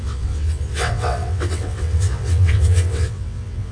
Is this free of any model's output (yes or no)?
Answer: no